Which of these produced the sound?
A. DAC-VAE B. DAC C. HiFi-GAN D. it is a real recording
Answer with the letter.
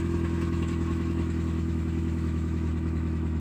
A